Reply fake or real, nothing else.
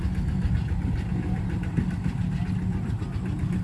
real